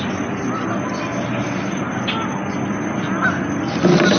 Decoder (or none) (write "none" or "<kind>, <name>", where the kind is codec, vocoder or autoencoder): none